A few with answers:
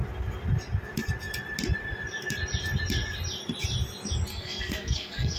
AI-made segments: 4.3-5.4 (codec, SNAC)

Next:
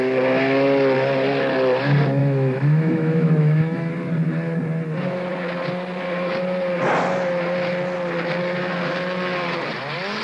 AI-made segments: 2.2-3.9 (autoencoder, DAC-VAE)

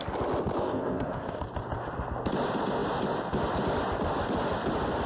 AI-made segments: 0.6-1.4 (codec, ZipCodec)